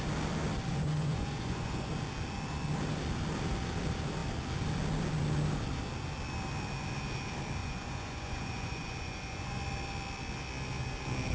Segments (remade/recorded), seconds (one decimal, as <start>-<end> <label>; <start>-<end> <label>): 0.0-0.7 recorded; 0.7-1.9 remade; 1.9-7.6 recorded; 7.6-9.6 remade; 9.6-11.3 recorded